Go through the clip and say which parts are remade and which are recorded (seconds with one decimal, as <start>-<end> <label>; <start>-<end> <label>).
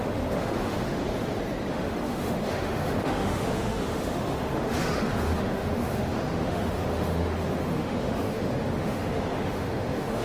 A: 0.0-1.0 remade; 1.0-1.7 recorded; 1.7-10.2 remade